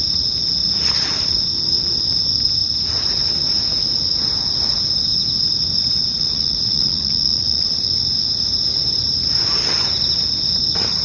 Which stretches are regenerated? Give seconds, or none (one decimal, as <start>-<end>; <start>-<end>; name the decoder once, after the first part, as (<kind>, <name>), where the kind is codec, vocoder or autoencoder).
6.1-7.9 (vocoder, Vocos)